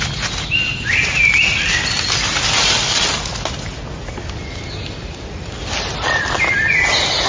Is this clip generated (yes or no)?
no